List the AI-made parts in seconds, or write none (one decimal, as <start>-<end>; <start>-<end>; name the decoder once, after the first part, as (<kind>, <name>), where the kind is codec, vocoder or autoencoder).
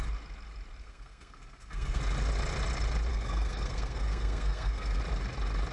0.8-2.0 (codec, SNAC); 3.1-5.0